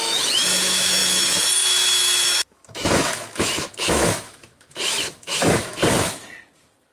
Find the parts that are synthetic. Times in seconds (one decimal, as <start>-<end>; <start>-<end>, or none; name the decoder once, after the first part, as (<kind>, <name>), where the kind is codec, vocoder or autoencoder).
0.0-5.8 (autoencoder, DAC-VAE)